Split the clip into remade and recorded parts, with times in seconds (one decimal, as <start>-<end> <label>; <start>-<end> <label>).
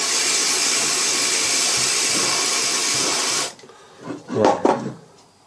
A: 0.0-5.5 recorded